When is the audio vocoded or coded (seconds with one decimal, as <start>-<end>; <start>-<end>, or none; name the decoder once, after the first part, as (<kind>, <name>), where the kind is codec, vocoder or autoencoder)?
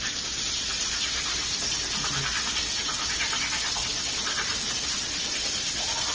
4.5-5.0 (vocoder, BigVGAN v2)